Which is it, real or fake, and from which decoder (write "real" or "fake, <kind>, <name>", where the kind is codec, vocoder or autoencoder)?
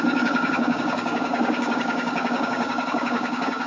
fake, codec, DAC